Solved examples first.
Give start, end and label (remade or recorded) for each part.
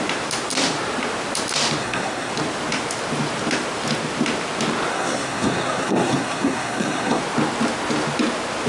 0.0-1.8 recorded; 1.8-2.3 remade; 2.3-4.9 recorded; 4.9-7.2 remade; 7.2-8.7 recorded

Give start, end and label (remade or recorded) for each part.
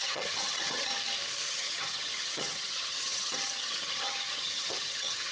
0.0-0.9 remade; 0.9-1.5 recorded; 1.5-5.3 remade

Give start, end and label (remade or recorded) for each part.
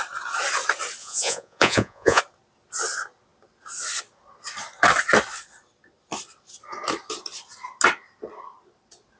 0.0-1.0 recorded; 1.0-2.2 remade; 2.2-9.2 recorded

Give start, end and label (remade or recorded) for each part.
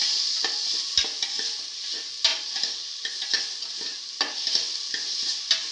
0.0-5.7 recorded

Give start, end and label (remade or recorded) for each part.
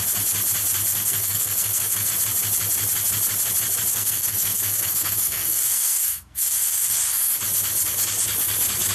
0.0-0.9 recorded; 0.9-2.1 remade; 2.1-3.9 recorded; 3.9-7.3 remade; 7.3-8.9 recorded